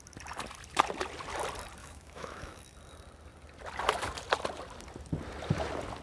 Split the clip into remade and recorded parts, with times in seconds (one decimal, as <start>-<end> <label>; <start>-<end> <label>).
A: 0.0-1.8 recorded; 1.8-2.6 remade; 2.6-6.0 recorded